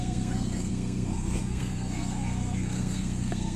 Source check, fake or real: fake